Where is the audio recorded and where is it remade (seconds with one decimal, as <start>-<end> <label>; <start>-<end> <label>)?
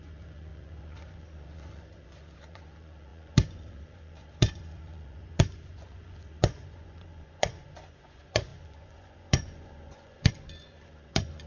0.0-11.5 remade